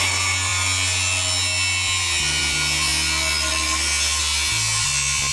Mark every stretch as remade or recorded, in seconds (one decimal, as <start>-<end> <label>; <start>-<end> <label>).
0.0-5.3 recorded